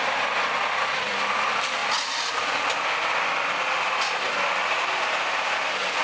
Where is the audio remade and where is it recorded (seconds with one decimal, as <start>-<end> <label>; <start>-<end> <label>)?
0.0-6.0 recorded